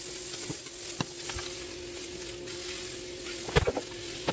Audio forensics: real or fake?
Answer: real